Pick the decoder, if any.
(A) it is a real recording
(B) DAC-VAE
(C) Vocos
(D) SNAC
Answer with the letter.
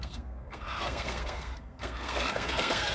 D